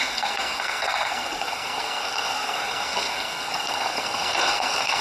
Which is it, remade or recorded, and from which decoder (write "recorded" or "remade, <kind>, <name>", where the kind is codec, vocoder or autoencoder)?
remade, codec, SNAC